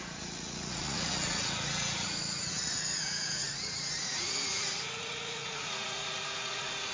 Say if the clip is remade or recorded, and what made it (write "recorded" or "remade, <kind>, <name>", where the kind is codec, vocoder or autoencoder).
remade, vocoder, Vocos